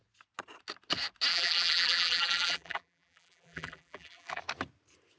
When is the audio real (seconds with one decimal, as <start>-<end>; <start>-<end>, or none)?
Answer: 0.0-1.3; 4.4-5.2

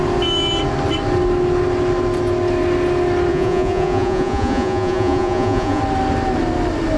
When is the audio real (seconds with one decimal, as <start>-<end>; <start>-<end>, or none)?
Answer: 0.0-3.3; 5.8-7.0

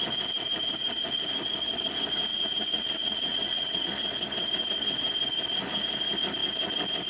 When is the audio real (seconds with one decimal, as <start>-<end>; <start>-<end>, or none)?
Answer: 0.0-2.3; 3.8-7.1

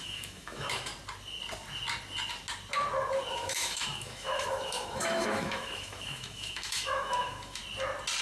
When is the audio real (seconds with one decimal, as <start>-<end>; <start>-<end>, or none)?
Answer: 0.9-3.3; 7.6-8.2